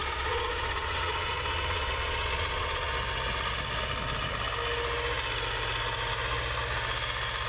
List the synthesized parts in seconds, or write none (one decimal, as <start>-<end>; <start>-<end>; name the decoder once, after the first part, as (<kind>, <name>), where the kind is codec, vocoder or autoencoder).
0.0-2.9 (vocoder, Vocos)

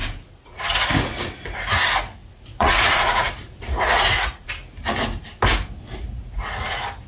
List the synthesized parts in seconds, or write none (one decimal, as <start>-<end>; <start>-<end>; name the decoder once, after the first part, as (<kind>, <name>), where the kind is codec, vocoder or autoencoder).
0.0-0.6 (vocoder, Vocos); 2.2-4.5

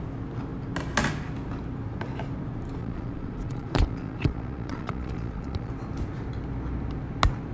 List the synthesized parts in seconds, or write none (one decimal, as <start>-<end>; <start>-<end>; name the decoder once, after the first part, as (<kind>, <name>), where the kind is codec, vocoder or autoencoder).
2.8-5.7 (vocoder, Vocos)